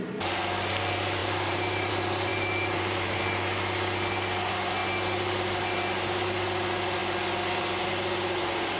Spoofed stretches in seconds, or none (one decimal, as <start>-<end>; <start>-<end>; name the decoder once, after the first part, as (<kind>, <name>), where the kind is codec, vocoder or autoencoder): 1.2-1.9 (vocoder, BigVGAN v2); 2.3-3.2